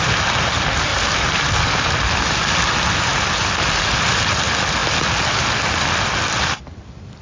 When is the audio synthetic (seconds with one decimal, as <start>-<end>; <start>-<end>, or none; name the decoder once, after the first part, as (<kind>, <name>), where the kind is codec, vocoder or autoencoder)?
none

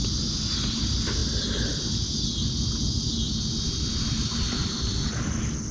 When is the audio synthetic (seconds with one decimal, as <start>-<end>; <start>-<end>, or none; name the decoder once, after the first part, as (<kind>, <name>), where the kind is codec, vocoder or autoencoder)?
none